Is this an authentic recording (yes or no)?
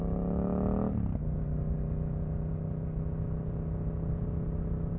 yes